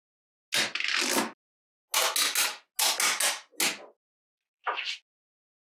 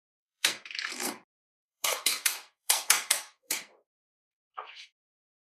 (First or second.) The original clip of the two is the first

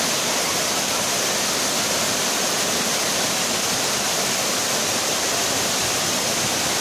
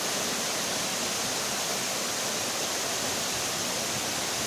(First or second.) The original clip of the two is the second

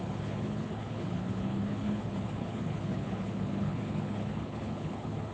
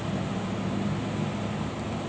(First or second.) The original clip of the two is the second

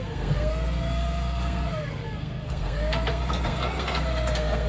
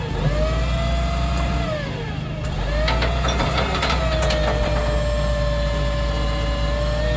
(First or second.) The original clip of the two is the second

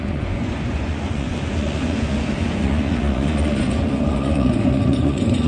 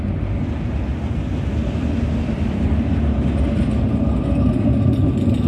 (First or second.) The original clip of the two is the second